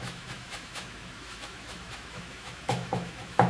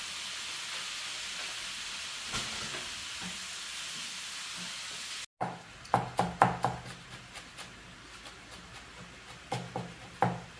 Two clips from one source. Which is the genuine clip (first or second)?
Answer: second